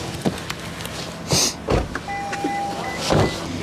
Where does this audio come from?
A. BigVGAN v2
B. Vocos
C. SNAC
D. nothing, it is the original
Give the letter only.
D